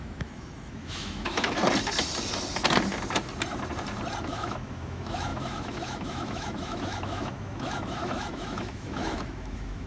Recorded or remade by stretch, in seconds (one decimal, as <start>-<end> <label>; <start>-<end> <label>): 0.0-1.6 remade; 1.6-4.2 recorded; 4.2-9.9 remade